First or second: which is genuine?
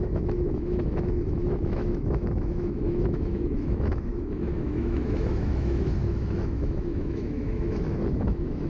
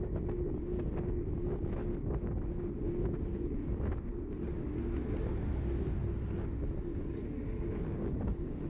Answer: second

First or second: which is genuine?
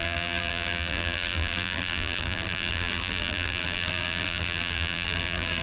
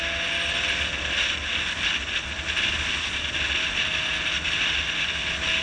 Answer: second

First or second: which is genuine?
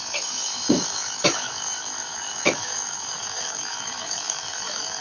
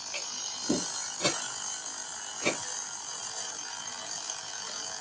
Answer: second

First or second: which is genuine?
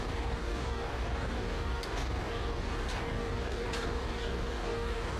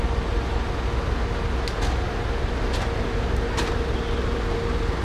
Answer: second